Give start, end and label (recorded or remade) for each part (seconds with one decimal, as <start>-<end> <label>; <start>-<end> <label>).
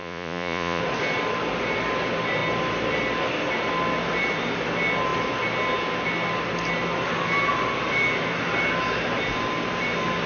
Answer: 0.0-0.8 remade; 0.8-10.3 recorded